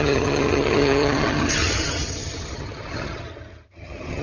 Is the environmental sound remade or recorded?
remade